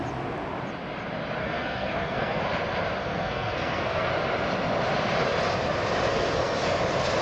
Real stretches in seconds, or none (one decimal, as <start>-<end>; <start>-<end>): 0.0-1.4; 2.4-3.0; 4.1-6.1; 6.8-7.2